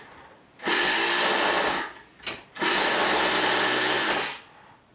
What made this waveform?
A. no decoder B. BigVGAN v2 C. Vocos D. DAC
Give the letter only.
A